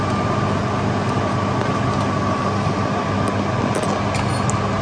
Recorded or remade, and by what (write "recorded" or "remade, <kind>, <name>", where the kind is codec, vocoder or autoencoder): recorded